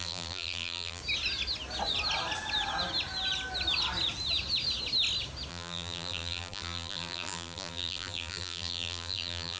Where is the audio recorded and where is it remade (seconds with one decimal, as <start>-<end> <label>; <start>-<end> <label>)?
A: 0.0-1.0 remade; 1.0-5.5 recorded; 5.5-9.6 remade